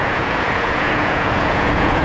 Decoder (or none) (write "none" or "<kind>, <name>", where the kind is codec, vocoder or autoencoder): vocoder, Vocos